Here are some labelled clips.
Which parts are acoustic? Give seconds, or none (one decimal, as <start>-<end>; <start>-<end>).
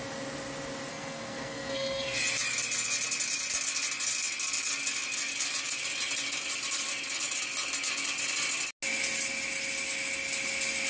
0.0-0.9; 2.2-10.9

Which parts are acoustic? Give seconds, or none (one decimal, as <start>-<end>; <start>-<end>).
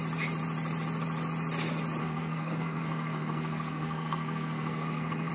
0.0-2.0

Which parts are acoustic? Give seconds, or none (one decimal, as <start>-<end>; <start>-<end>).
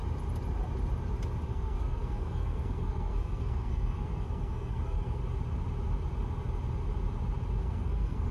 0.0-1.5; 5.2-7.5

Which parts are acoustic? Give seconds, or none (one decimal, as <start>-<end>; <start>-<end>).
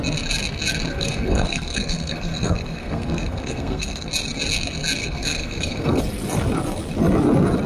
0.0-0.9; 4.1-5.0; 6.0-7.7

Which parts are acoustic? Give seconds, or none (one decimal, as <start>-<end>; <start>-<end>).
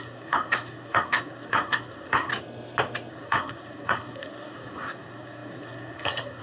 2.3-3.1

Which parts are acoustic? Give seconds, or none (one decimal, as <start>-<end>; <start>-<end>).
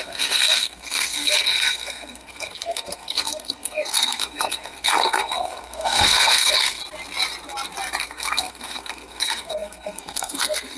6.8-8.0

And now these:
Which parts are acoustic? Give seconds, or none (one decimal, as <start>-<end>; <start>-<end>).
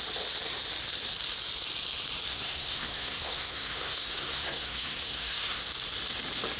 0.0-2.3; 5.6-6.6